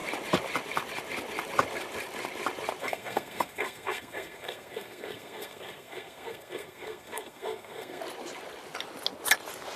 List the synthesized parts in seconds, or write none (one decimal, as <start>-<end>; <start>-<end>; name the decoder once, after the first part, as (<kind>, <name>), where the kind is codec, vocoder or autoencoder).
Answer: 2.8-8.0 (codec, SNAC)